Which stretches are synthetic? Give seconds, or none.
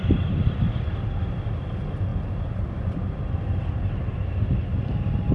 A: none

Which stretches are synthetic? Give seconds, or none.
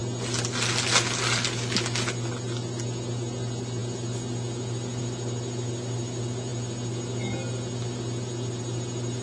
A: none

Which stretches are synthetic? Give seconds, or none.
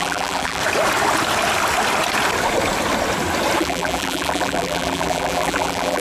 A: 0.0-0.6 (vocoder, BigVGAN v2); 3.6-6.0